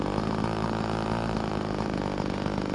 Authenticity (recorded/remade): recorded